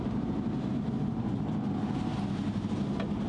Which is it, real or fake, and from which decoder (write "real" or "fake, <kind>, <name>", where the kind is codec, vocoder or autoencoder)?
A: real